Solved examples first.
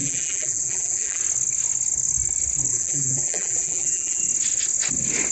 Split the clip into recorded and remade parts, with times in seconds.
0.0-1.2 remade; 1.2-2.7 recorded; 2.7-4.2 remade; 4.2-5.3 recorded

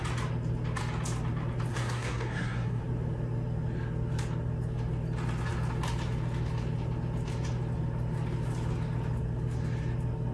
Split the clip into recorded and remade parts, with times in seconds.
0.0-1.7 recorded; 1.7-2.8 remade; 2.8-10.3 recorded

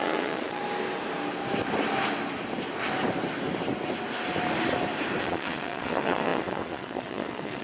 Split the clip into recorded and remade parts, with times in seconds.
0.0-0.6 remade; 0.6-5.2 recorded; 5.2-7.6 remade

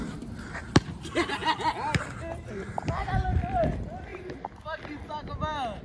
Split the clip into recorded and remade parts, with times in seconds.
0.0-5.8 recorded